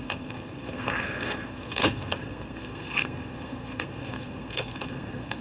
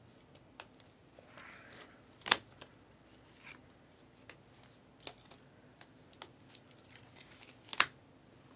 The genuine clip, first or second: second